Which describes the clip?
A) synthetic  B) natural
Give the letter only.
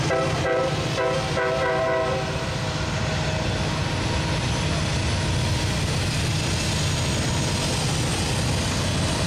B